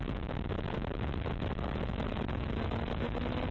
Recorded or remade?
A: remade